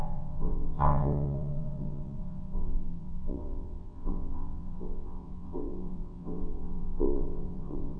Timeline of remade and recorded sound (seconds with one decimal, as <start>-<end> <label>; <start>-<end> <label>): 0.0-8.0 remade